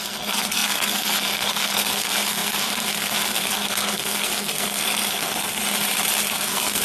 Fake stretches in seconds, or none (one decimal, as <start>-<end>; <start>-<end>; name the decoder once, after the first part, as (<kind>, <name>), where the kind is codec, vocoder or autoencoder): 0.0-5.6 (codec, SNAC); 6.3-6.8